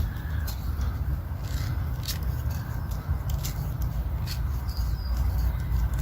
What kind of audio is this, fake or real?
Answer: real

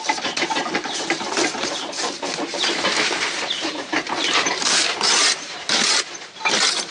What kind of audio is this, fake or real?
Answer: fake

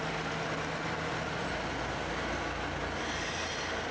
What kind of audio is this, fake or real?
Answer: real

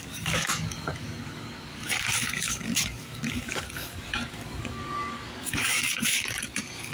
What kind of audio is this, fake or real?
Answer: fake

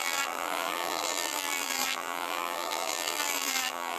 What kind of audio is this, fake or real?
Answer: fake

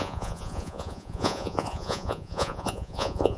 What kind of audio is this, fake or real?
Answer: fake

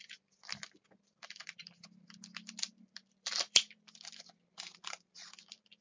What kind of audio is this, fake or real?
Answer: fake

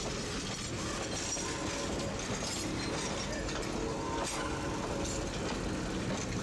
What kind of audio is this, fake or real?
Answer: real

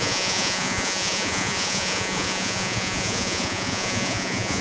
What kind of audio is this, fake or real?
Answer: fake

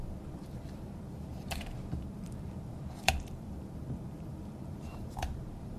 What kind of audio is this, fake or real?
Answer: fake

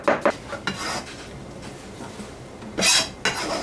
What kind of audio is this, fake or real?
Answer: real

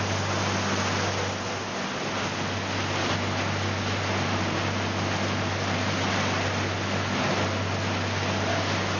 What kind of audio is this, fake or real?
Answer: real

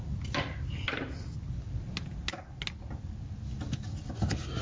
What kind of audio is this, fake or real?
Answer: real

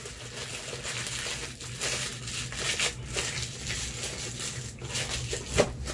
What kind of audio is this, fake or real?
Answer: real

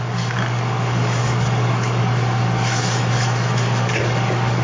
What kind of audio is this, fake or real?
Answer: fake